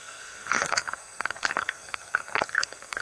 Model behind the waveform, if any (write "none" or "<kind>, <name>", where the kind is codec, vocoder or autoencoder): codec, SNAC